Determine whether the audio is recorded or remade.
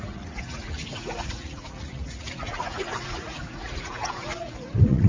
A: remade